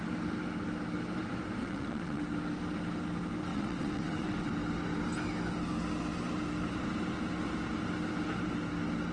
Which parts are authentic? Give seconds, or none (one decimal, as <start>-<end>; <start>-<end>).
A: 0.0-1.6; 2.2-3.5; 4.5-9.1